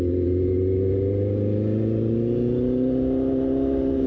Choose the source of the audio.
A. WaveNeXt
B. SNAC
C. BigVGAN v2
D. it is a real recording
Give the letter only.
D